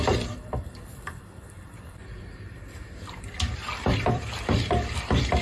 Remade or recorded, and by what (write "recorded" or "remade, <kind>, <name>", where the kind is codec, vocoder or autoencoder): remade, vocoder, BigVGAN v2